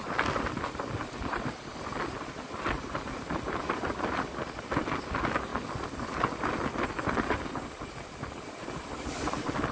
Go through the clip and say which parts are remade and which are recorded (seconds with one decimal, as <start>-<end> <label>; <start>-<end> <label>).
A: 0.0-9.7 recorded